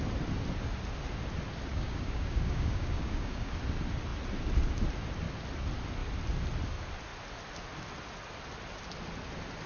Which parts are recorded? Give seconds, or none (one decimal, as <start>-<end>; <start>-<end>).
0.0-1.7; 3.6-9.7